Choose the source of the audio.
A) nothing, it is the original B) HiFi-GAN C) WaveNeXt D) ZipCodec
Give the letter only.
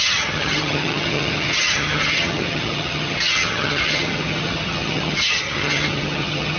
B